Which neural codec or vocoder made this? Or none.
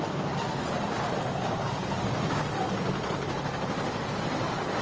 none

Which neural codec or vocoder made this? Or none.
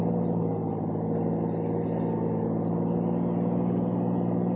none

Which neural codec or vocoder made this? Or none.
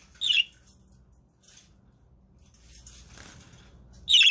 none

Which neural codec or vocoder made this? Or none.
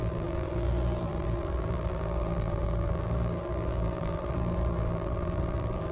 vocoder, BigVGAN v2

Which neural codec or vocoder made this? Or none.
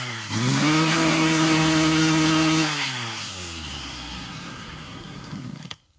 codec, SNAC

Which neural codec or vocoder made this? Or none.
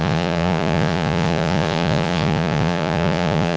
vocoder, Vocos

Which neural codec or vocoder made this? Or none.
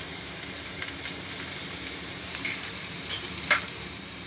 vocoder, BigVGAN v2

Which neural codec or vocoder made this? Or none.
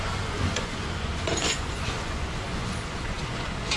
vocoder, Vocos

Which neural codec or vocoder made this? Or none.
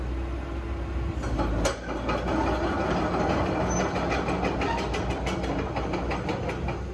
none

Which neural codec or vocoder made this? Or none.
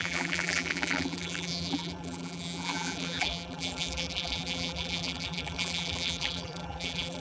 vocoder, BigVGAN v2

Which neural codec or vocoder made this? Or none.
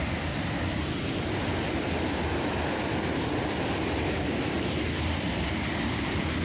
none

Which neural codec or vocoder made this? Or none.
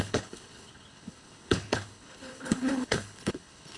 codec, HILCodec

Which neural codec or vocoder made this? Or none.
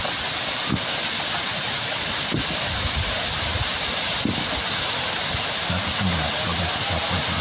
none